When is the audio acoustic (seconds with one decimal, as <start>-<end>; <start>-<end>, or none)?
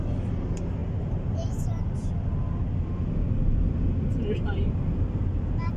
0.0-5.8